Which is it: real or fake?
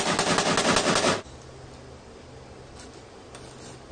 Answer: real